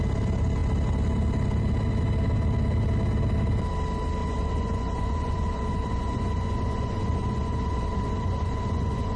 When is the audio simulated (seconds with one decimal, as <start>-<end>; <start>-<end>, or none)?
4.2-9.2